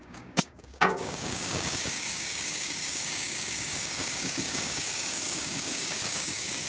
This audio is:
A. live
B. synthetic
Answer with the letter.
B